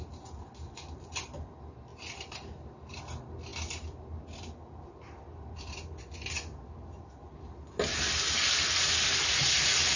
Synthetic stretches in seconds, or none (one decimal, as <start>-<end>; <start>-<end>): 1.9-2.9